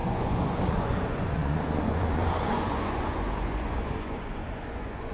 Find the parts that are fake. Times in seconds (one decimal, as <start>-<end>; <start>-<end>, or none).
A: 0.0-5.1